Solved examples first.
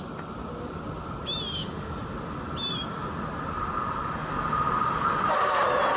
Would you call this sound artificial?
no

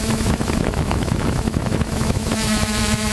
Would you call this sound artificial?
yes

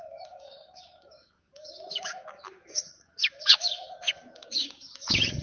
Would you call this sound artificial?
yes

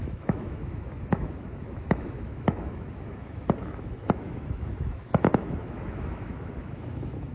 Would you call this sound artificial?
yes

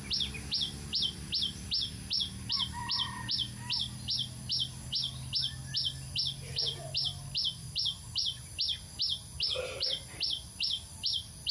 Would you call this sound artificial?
no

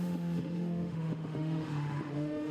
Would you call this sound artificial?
yes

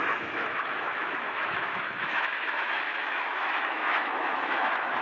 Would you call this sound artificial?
yes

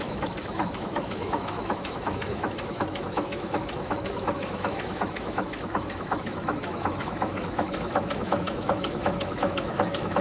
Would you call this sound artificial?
yes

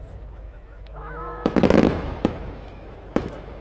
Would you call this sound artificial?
yes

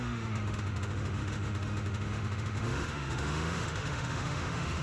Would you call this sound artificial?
yes